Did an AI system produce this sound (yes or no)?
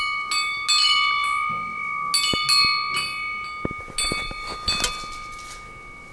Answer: no